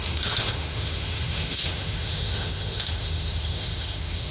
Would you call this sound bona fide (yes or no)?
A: no